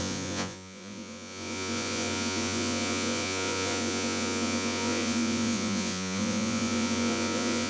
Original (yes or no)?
no